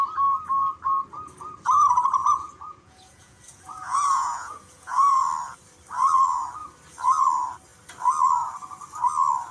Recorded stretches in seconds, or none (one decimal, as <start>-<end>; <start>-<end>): 0.0-2.2; 5.2-9.5